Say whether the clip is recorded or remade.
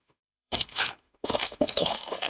remade